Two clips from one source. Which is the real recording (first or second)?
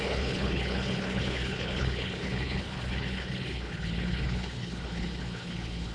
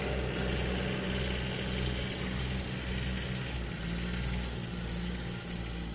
second